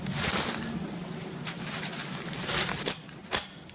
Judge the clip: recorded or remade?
recorded